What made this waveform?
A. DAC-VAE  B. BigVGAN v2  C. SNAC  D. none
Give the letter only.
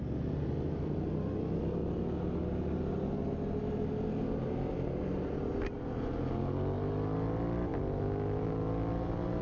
D